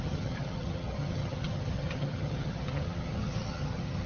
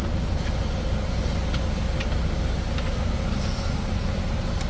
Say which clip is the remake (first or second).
first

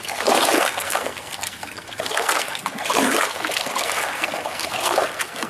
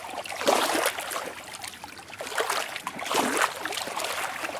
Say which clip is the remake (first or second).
first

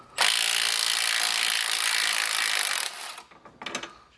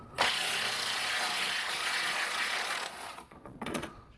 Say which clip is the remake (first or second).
second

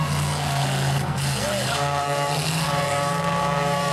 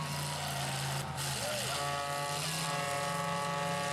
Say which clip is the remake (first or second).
first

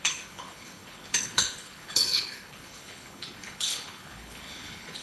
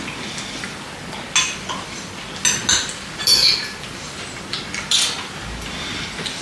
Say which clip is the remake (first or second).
first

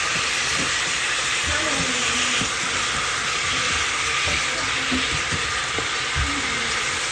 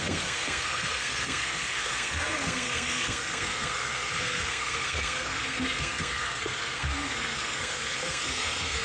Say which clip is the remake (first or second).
second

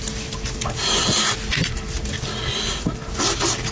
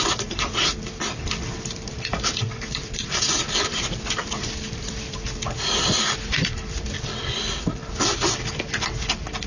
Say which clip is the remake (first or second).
second